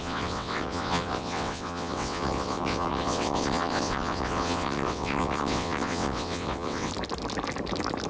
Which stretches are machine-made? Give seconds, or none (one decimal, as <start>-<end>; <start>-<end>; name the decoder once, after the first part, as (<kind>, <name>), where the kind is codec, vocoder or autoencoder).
0.0-6.9 (vocoder, WaveNeXt)